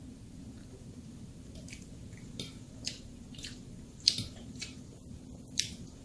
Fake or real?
fake